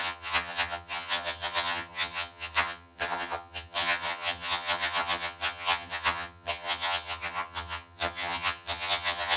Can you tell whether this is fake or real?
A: fake